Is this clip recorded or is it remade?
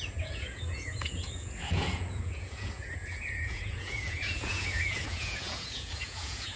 remade